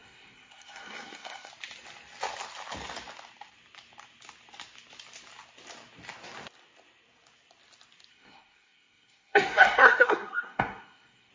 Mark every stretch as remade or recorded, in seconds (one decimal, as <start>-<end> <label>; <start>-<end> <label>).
0.0-1.5 remade; 1.5-8.1 recorded; 8.1-11.3 remade